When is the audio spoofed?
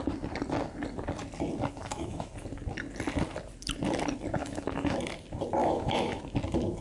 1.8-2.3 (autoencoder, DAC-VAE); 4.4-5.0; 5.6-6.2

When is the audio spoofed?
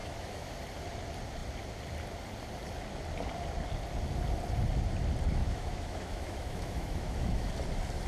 0.0-0.5 (autoencoder, DAC-VAE); 5.4-7.5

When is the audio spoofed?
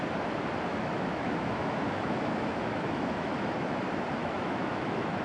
0.7-3.8 (autoencoder, DAC-VAE); 4.2-5.2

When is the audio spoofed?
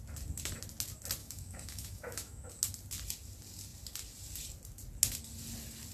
1.2-2.5 (autoencoder, DAC-VAE)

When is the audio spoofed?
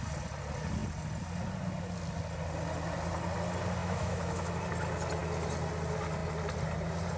3.8-4.5 (autoencoder, DAC-VAE)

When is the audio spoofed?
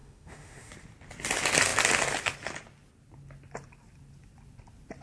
0.0-0.7 (autoencoder, DAC-VAE)